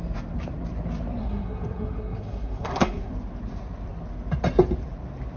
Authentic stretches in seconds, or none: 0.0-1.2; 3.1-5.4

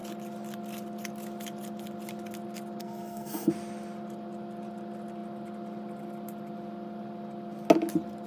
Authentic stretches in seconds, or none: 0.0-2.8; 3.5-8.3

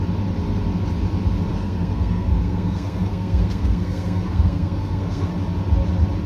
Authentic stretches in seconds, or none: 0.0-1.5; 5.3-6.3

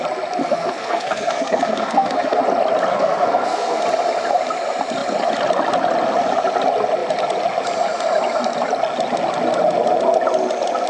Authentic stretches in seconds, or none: 0.0-0.4; 2.4-2.9; 3.8-10.9

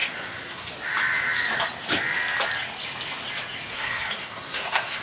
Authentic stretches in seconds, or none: 0.7-3.7

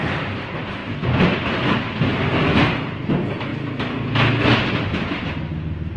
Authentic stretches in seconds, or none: 0.0-6.0

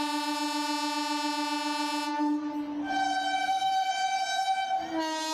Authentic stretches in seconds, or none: 0.0-3.4; 3.9-5.3